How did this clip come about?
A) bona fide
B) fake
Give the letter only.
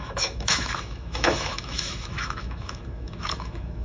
B